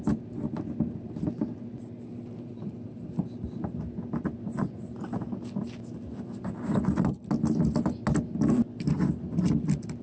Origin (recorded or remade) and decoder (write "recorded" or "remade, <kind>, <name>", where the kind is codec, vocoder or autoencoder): recorded